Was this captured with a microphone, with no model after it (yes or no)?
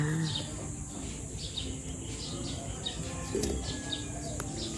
yes